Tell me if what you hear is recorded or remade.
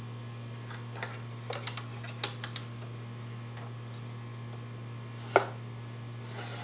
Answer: recorded